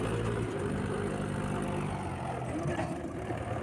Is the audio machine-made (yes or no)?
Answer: no